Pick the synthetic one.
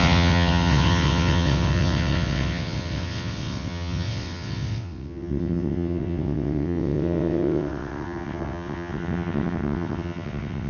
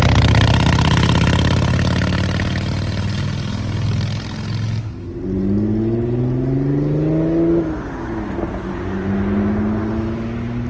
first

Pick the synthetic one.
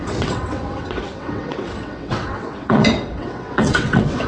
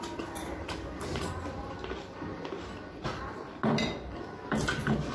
first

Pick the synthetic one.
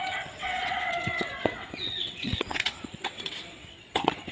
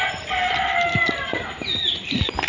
first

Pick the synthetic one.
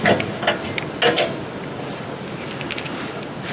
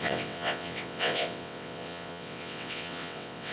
second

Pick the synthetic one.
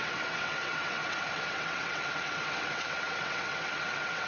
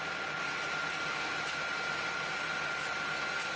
first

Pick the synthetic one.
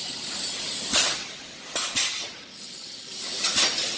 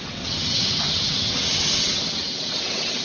second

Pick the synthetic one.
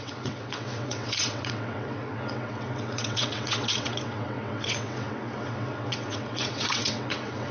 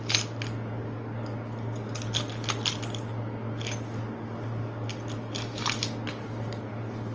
first